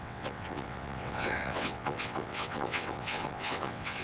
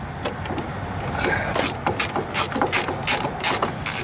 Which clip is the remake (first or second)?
first